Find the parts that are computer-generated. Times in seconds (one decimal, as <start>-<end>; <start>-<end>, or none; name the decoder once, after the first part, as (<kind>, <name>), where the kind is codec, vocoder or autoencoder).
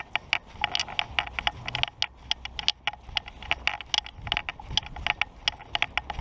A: none